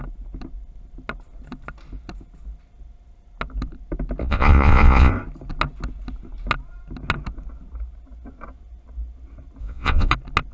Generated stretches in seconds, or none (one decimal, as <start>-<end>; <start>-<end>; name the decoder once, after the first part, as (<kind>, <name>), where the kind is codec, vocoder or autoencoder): 4.2-5.1 (vocoder, Vocos); 9.6-10.1